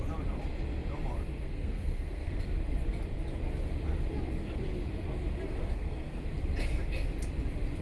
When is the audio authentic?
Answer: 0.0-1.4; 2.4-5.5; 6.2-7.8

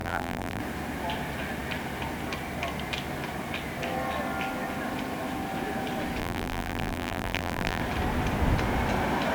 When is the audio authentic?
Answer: 0.6-6.2; 7.8-9.3

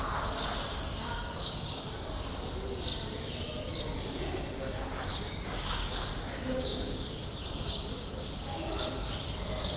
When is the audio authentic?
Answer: 0.0-0.7; 1.9-5.1; 8.6-9.8

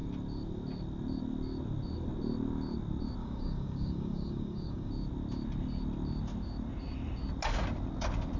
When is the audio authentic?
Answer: 0.0-3.2; 4.9-8.4

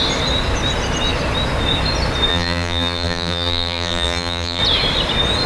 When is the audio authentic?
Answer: 0.0-2.3; 4.6-5.5

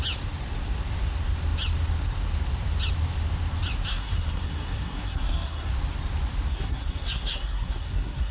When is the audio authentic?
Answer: 0.0-3.9; 5.7-6.5

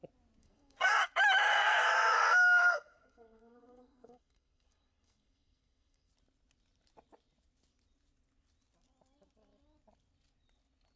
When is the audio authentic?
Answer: 0.0-0.4; 1.1-1.5; 6.1-11.0

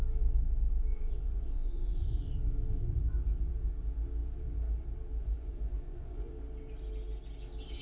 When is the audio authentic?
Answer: 0.0-0.9; 2.3-5.2; 6.3-7.8